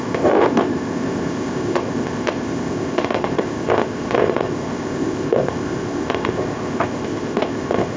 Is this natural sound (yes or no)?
no